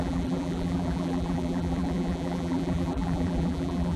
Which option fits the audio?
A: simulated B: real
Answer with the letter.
A